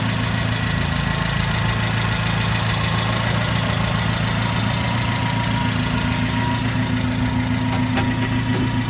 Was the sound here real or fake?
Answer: real